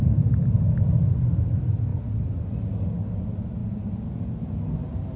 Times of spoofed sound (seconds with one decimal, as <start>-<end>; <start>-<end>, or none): 3.6-4.7